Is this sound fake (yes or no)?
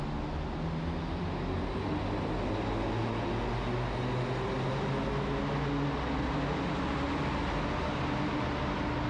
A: no